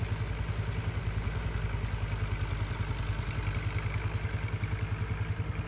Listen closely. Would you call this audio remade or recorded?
recorded